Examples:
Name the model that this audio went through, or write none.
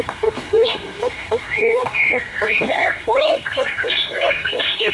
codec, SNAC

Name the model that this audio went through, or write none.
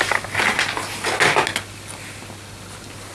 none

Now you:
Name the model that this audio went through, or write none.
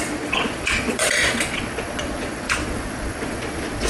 vocoder, Vocos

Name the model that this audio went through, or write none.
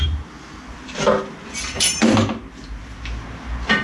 none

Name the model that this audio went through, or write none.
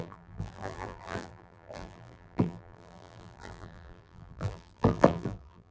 vocoder, BigVGAN v2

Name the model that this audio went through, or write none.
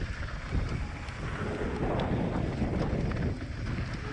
none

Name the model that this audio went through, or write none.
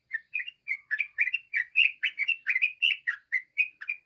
vocoder, Vocos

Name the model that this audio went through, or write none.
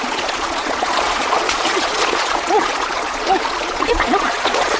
vocoder, Vocos